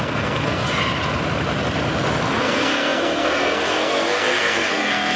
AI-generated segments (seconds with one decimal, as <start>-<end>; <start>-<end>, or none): 0.0-0.8; 2.4-5.2